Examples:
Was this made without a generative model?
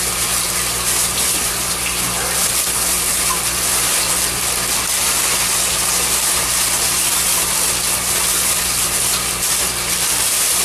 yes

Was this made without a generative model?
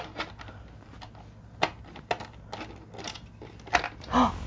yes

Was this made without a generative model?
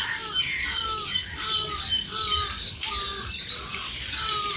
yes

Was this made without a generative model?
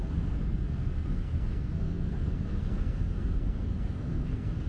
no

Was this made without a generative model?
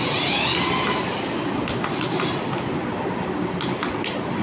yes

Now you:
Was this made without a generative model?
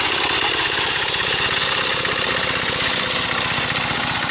yes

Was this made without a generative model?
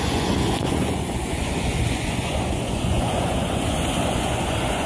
no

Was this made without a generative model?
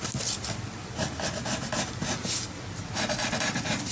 yes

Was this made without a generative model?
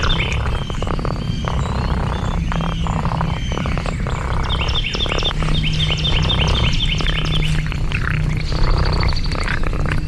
yes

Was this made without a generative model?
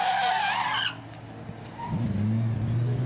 yes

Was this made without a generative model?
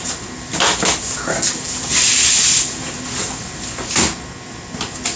yes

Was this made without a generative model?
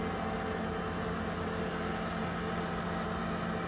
yes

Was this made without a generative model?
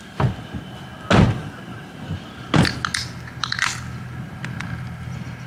yes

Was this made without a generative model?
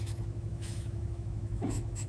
no